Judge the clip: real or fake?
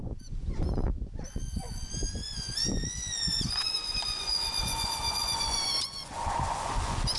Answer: fake